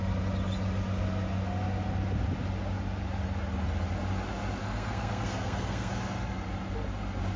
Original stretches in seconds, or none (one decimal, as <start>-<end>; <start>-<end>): 0.0-4.6; 5.9-7.4